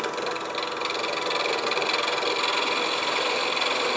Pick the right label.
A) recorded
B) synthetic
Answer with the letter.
A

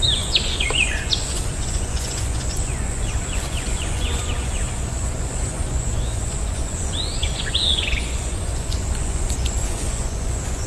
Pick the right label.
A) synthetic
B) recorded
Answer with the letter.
A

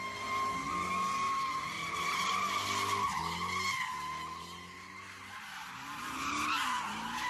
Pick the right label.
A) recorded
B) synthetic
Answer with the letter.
A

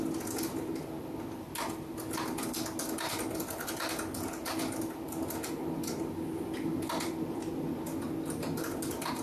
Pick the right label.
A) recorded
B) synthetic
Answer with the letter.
A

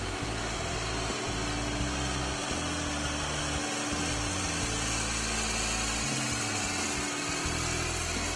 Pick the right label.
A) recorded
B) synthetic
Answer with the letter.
A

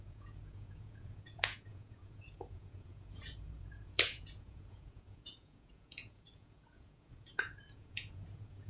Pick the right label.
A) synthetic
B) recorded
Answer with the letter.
A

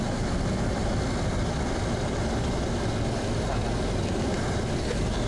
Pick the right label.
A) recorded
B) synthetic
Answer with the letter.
A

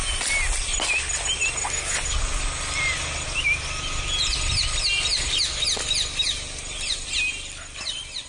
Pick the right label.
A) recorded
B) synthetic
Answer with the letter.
A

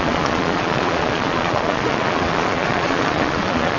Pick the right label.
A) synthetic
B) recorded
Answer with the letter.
A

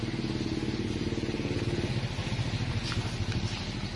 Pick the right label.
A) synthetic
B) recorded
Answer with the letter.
B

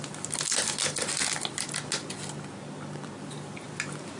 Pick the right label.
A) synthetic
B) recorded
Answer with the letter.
B